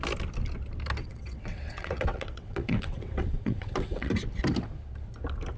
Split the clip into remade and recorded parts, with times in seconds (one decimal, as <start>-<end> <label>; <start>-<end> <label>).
0.0-1.0 recorded; 1.0-4.1 remade; 4.1-5.6 recorded